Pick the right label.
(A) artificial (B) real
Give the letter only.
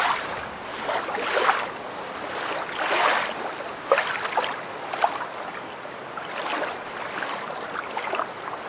B